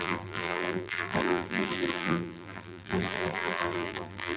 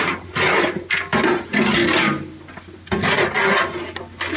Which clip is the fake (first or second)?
first